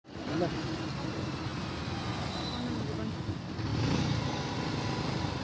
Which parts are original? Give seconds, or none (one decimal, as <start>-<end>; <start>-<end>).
0.0-5.4